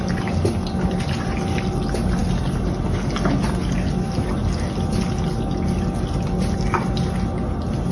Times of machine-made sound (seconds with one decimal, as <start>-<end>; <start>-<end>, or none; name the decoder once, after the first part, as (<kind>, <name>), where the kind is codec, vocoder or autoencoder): none